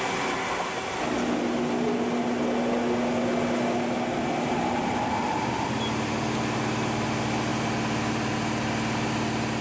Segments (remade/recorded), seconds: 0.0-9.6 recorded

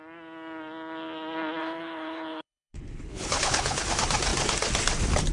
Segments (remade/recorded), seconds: 0.0-1.6 recorded; 1.6-3.8 remade; 3.8-5.3 recorded

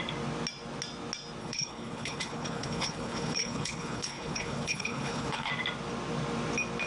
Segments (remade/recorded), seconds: 0.0-1.4 recorded; 1.4-5.5 remade; 5.5-6.9 recorded

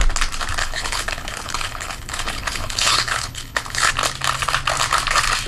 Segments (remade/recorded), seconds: 0.0-0.6 recorded; 0.6-3.9 remade; 3.9-5.5 recorded

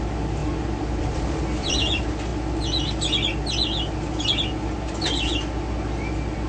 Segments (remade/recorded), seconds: 0.0-6.5 recorded